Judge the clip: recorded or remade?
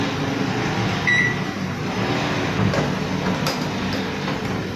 recorded